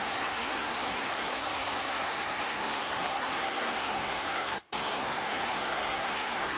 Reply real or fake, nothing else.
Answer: fake